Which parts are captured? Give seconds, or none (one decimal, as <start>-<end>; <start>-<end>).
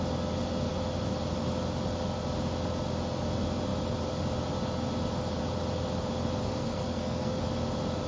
0.0-6.4; 7.4-8.1